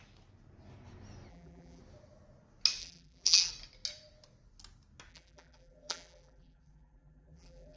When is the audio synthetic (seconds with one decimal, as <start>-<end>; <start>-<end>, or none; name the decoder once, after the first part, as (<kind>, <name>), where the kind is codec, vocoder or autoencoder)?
1.3-1.8 (vocoder, BigVGAN v2); 2.8-3.5; 5.1-7.8

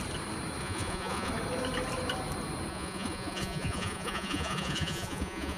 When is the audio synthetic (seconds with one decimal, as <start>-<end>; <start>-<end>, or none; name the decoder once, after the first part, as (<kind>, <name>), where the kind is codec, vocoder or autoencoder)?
0.6-1.3 (vocoder, Vocos); 2.7-5.6

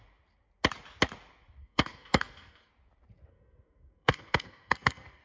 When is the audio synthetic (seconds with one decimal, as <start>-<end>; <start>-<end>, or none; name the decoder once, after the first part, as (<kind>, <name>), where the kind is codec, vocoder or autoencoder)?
1.6-2.7 (codec, SNAC); 3.3-5.2

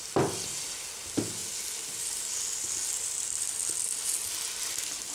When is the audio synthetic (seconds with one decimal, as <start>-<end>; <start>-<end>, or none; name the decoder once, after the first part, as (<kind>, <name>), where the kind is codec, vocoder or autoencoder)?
none